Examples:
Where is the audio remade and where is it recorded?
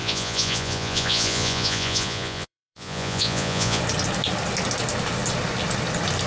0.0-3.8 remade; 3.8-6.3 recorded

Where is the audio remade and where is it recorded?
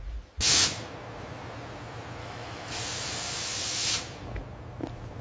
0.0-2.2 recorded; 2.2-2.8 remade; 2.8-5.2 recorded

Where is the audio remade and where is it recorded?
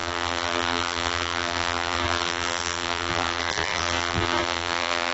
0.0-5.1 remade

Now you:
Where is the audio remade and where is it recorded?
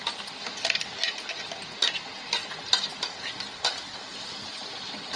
0.0-2.4 recorded; 2.4-3.3 remade; 3.3-5.2 recorded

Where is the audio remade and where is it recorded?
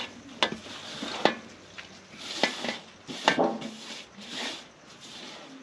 0.0-5.6 recorded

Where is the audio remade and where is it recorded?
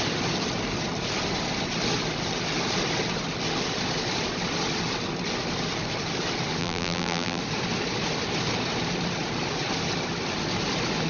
0.0-6.6 recorded; 6.6-7.4 remade; 7.4-11.1 recorded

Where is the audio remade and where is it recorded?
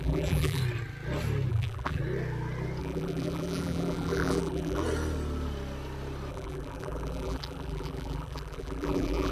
0.0-0.6 remade; 0.6-1.5 recorded; 1.5-2.0 remade; 2.0-2.8 recorded; 2.8-4.8 remade; 4.8-6.3 recorded; 6.3-9.3 remade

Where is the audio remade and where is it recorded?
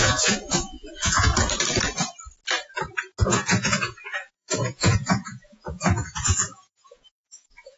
0.0-1.3 remade; 1.3-3.2 recorded; 3.2-7.8 remade